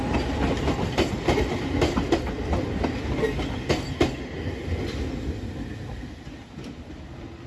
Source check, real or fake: real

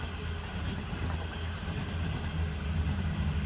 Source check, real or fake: real